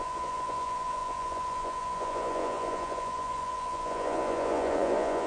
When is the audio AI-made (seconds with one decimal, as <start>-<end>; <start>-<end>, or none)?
0.0-5.3